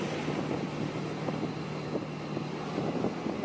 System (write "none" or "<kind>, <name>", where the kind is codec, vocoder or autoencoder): none